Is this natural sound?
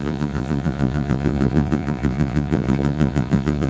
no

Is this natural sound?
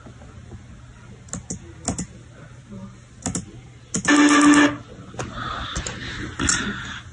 yes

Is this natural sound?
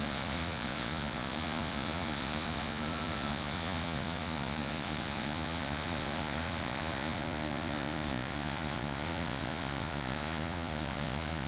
no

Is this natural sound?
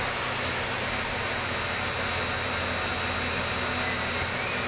yes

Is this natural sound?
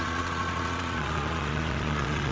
no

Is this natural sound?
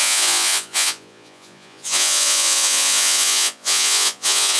no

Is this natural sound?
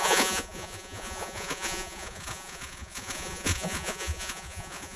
no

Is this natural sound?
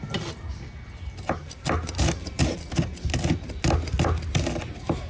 yes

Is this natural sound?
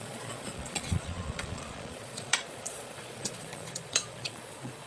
no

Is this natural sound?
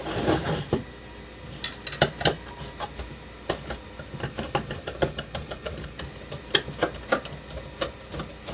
yes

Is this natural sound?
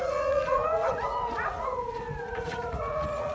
no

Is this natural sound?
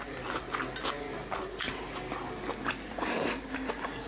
yes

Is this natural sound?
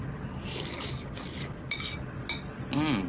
yes